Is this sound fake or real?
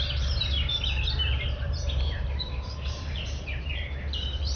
fake